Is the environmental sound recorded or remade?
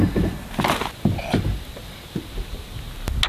recorded